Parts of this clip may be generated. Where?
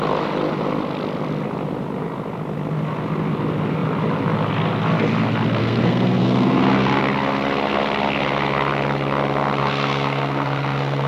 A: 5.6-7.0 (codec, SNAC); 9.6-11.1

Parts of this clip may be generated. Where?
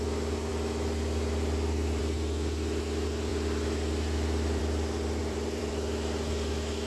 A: 5.2-5.7 (vocoder, BigVGAN v2)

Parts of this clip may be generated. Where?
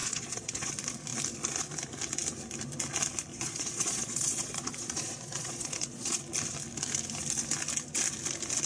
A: 0.0-0.7 (vocoder, Vocos); 3.3-6.2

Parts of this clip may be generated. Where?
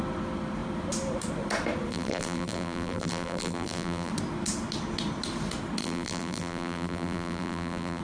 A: 1.9-4.1 (vocoder, BigVGAN v2); 5.8-8.0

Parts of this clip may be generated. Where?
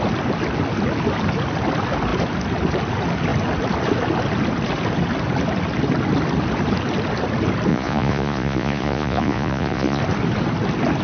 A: 7.7-10.0 (vocoder, Vocos)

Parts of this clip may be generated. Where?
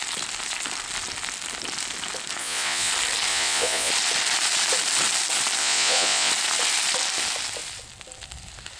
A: 2.4-2.9 (vocoder, Vocos); 3.3-3.9; 5.6-6.3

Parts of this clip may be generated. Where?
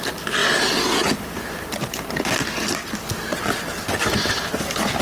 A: none